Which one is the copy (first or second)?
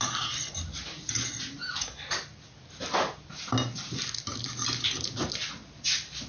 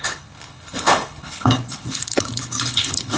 second